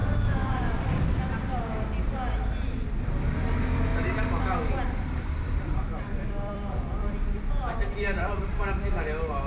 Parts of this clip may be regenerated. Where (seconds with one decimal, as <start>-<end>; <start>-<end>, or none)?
0.0-1.6; 3.9-8.5